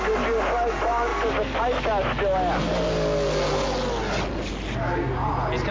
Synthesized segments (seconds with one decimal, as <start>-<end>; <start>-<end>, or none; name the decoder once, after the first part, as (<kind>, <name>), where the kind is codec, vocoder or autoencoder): none